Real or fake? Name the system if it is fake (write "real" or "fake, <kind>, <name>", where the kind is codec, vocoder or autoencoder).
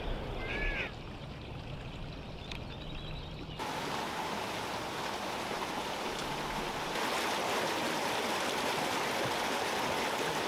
real